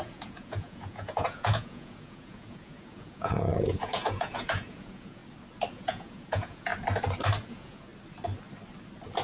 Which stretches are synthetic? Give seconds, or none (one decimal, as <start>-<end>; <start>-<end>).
0.0-5.2; 5.7-6.7; 7.4-7.9